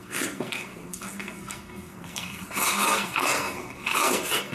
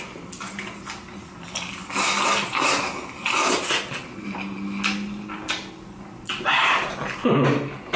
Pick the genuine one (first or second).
second